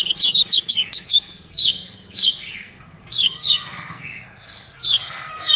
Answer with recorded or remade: remade